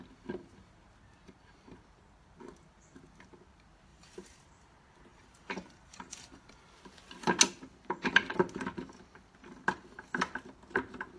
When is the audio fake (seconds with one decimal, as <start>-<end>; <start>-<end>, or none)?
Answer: 3.9-4.4; 5.1-6.6